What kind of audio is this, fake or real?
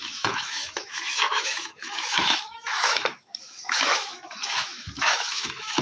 fake